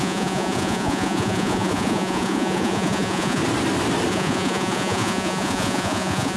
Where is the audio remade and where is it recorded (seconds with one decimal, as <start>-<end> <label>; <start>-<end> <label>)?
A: 0.0-3.4 remade; 3.4-4.1 recorded; 4.1-6.4 remade